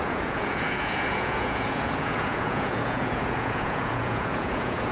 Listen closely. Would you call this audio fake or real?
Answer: fake